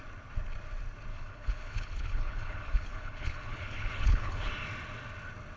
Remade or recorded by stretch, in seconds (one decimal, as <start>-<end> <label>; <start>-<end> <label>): 0.0-1.1 recorded; 1.1-4.5 remade; 4.5-5.6 recorded